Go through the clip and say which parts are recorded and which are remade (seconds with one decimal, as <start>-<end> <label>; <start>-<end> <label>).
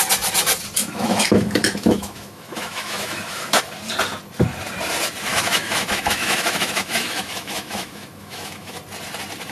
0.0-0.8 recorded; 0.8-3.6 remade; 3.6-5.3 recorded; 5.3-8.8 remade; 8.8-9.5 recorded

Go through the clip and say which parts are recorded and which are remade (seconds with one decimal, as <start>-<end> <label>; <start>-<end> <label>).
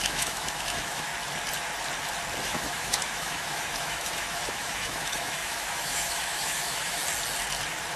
0.0-1.1 remade; 1.1-2.4 recorded; 2.4-7.0 remade; 7.0-8.0 recorded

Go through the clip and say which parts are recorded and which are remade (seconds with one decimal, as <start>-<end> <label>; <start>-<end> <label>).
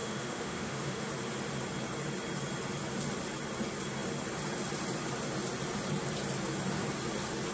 0.0-1.1 remade; 1.1-7.5 recorded